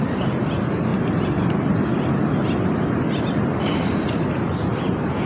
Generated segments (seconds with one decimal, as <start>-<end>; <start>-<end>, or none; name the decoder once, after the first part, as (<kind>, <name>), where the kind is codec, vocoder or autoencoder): none